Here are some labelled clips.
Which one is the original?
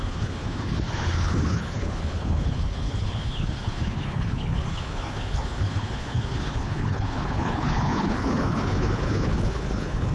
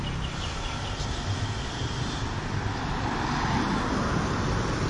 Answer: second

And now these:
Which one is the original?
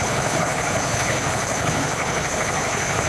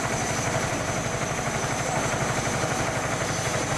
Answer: second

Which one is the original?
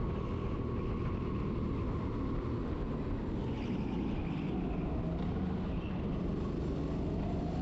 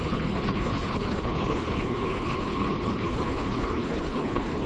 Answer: first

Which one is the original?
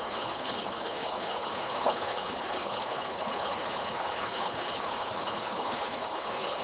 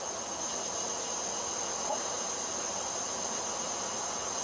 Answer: second